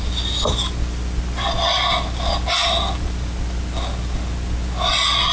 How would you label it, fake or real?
real